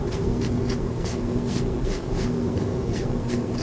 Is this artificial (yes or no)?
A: yes